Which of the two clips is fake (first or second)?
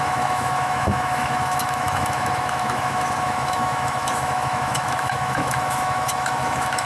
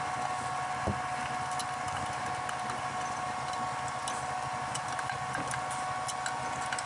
first